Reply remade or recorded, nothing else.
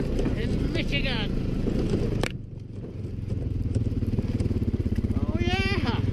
remade